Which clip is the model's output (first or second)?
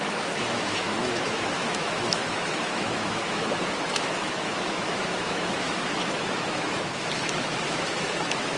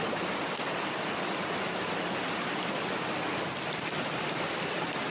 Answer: first